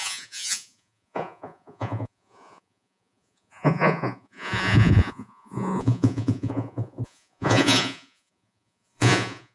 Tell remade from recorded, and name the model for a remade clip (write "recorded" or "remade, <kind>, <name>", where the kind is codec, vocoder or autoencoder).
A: remade, vocoder, Vocos